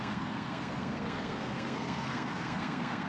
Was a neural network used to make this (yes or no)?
yes